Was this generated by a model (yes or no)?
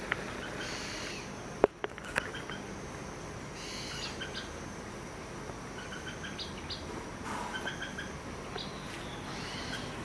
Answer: no